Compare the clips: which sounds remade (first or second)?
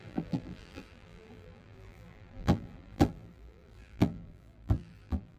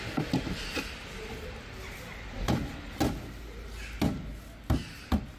first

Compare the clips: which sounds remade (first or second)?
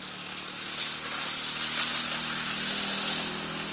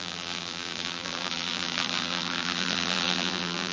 second